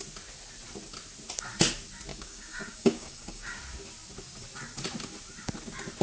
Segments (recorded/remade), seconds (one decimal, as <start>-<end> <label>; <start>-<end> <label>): 0.0-2.1 recorded; 2.1-3.6 remade; 3.6-6.0 recorded